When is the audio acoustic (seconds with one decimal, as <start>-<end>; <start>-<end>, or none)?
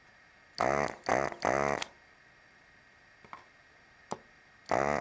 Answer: 0.0-5.0